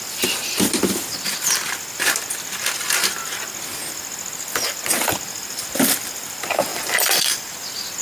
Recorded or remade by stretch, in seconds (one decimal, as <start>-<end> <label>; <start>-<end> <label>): 0.0-6.7 recorded; 6.7-7.4 remade; 7.4-8.0 recorded